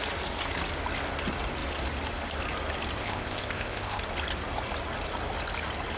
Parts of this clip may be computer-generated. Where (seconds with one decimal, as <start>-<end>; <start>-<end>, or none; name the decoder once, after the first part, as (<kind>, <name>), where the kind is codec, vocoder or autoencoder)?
3.0-4.0 (codec, ZipCodec)